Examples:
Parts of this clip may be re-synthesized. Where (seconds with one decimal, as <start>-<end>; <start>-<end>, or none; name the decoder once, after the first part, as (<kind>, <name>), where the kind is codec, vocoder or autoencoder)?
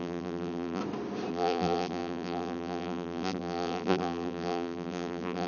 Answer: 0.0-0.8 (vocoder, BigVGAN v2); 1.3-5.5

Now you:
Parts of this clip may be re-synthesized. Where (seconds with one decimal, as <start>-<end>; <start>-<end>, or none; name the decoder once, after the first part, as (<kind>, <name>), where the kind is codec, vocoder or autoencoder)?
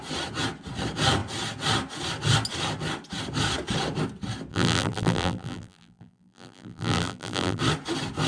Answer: 4.5-7.6 (vocoder, BigVGAN v2)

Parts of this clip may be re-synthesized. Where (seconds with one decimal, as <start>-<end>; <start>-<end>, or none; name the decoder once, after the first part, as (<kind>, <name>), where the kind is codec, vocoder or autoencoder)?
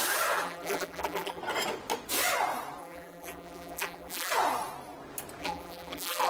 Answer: 0.4-1.4 (vocoder, BigVGAN v2); 2.8-4.3; 5.4-6.3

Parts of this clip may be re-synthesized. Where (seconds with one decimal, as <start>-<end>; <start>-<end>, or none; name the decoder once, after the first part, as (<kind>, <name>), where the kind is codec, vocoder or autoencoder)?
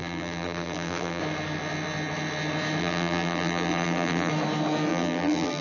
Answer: 0.0-1.2 (vocoder, BigVGAN v2); 2.8-4.3; 4.9-5.6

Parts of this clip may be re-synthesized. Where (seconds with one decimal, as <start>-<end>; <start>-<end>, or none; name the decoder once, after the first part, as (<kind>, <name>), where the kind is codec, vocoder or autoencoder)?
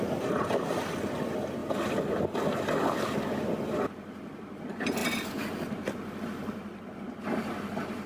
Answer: none